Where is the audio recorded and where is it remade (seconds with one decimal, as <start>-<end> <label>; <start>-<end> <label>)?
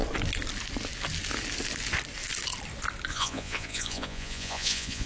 0.0-3.1 recorded; 3.1-5.1 remade